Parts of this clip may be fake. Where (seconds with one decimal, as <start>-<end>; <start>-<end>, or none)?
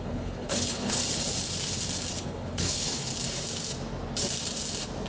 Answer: 0.0-1.0; 2.2-3.1